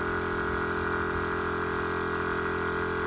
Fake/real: real